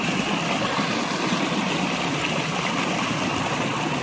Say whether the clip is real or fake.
real